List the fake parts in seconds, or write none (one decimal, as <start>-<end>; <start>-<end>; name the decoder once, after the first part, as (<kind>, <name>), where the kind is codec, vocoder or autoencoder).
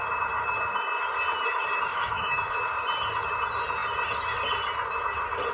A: 1.9-2.6 (autoencoder, DAC-VAE)